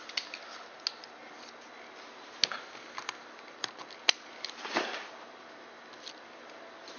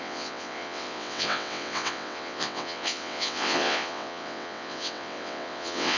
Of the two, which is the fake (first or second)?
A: second